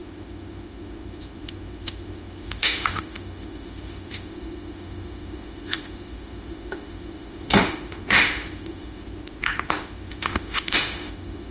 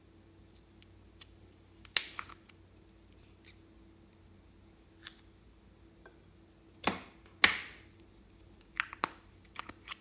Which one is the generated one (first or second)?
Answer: first